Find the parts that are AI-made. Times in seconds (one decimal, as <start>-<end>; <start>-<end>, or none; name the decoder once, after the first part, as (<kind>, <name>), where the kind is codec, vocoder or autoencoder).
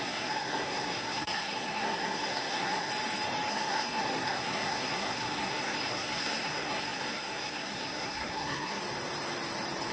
0.0-2.9 (codec, SNAC); 3.5-8.8